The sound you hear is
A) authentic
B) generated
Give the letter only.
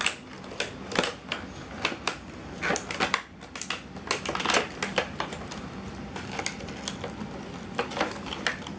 A